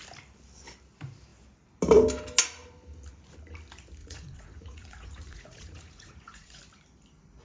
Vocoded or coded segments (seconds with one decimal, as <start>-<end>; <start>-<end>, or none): 4.0-6.6